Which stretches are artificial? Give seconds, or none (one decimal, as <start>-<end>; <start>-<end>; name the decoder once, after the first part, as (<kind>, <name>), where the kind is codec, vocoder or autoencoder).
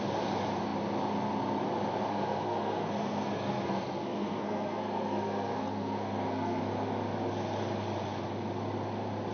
2.1-6.6 (codec, SNAC)